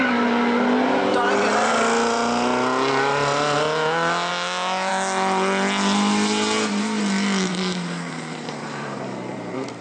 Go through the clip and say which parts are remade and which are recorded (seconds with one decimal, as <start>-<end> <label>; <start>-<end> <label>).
0.0-1.1 recorded; 1.1-1.7 remade; 1.7-7.5 recorded; 7.5-9.8 remade

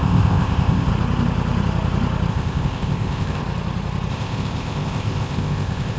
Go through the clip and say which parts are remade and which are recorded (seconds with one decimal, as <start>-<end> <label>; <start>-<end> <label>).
0.0-0.9 remade; 0.9-2.3 recorded; 2.3-3.4 remade; 3.4-4.1 recorded; 4.1-6.0 remade

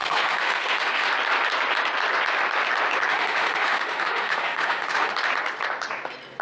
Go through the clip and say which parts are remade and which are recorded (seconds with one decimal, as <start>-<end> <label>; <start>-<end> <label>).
0.0-1.1 remade; 1.1-3.1 recorded; 3.1-5.1 remade; 5.1-6.4 recorded

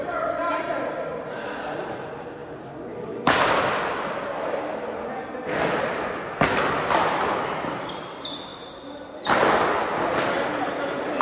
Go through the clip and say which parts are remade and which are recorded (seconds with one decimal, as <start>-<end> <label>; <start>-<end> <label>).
0.0-2.4 recorded; 2.4-3.4 remade; 3.4-11.2 recorded